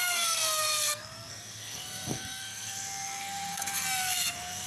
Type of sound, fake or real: fake